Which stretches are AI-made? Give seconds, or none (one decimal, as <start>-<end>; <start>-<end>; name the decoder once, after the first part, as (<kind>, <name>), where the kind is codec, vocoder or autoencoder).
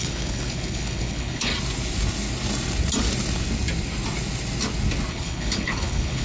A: 0.0-1.5 (codec, HILCodec); 5.1-6.2